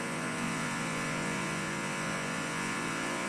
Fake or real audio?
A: fake